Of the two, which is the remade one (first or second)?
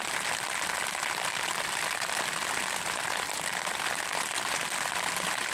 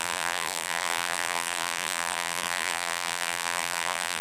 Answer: second